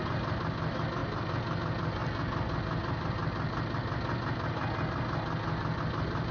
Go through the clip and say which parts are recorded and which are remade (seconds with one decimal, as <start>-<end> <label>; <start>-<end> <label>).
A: 0.0-6.3 recorded